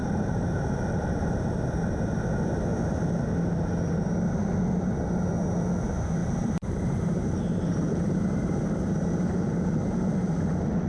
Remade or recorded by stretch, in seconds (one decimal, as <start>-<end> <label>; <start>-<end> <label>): 0.0-1.3 remade; 1.3-6.2 recorded; 6.2-10.1 remade; 10.1-10.9 recorded